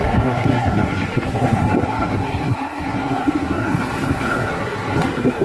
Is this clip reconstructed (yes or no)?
yes